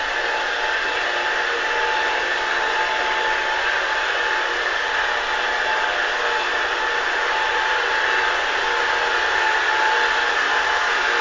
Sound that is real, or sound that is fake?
real